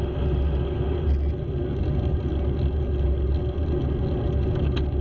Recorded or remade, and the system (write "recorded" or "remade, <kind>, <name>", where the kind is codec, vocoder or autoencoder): recorded